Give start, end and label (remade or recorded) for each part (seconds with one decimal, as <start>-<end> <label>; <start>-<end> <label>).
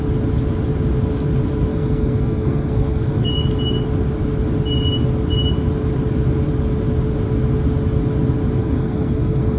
0.0-1.7 recorded; 1.7-3.3 remade; 3.3-8.6 recorded; 8.6-9.6 remade